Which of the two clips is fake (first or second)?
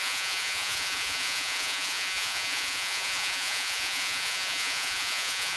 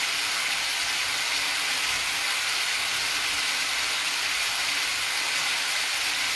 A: first